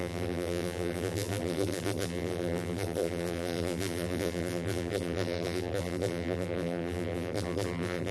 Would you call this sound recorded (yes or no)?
no